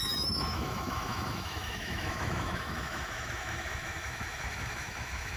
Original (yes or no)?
no